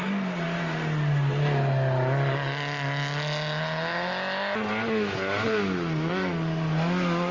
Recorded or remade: recorded